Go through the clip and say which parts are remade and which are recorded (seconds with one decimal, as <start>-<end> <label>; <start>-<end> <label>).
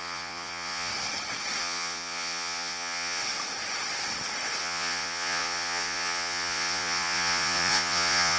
0.0-0.9 remade; 0.9-1.6 recorded; 1.6-3.2 remade; 3.2-4.6 recorded; 4.6-8.4 remade